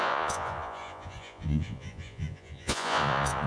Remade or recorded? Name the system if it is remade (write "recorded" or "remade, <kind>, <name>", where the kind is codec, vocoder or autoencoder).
remade, vocoder, Vocos